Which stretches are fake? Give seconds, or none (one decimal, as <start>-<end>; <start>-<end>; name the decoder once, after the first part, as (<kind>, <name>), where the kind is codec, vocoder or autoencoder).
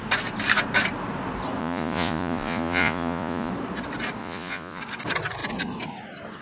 1.6-3.5 (vocoder, Vocos); 4.2-4.8